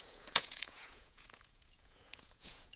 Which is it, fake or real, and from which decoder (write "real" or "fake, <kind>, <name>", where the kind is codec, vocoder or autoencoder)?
fake, vocoder, Vocos